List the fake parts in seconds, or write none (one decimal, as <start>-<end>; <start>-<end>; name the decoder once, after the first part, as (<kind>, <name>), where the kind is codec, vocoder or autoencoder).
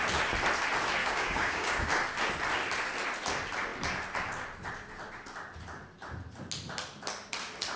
1.0-1.9 (codec, DAC)